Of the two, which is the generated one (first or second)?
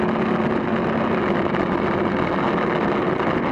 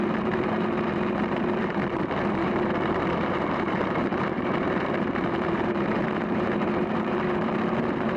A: second